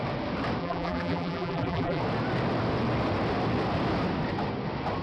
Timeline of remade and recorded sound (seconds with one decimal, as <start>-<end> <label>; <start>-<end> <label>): 0.0-0.6 recorded; 0.6-2.0 remade; 2.0-5.0 recorded